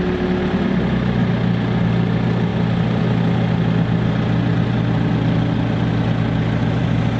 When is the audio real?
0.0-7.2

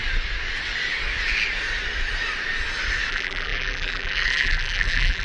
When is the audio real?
0.0-3.1

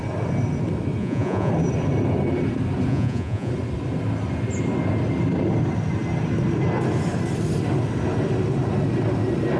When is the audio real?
0.0-1.0; 1.5-2.9; 3.5-9.6